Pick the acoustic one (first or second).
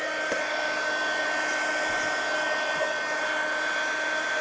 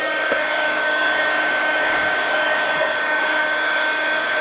first